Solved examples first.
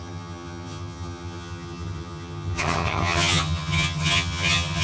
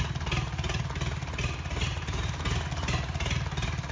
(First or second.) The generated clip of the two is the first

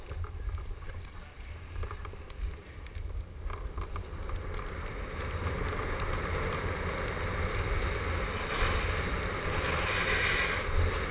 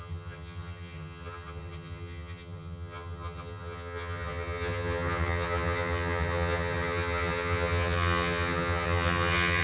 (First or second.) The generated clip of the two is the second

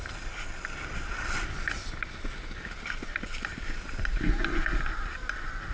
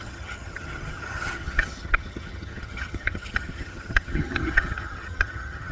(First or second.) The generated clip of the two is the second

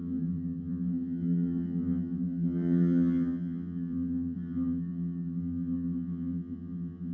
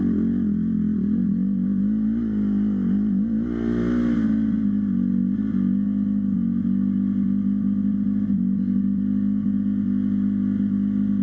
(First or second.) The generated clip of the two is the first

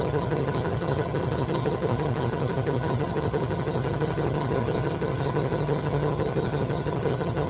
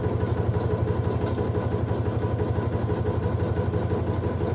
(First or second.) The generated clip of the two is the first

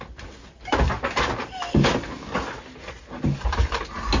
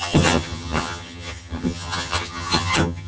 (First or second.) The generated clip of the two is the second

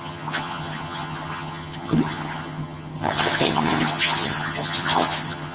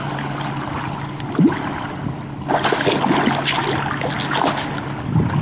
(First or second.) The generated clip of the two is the first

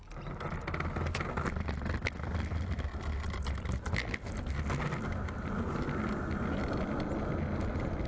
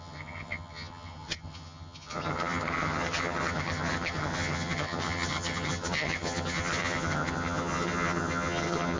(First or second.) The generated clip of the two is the second